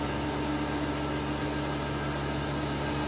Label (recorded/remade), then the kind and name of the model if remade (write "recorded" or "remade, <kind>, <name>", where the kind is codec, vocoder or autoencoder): recorded